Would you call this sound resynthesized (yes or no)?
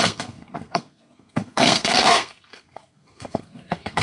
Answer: yes